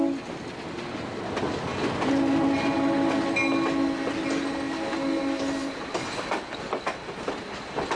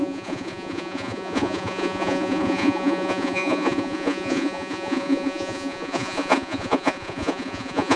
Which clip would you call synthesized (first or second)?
second